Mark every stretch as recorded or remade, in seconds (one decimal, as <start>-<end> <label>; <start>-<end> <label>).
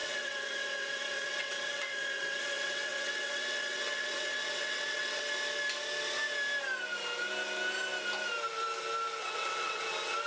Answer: 0.0-5.2 remade; 5.2-9.2 recorded; 9.2-9.8 remade; 9.8-10.3 recorded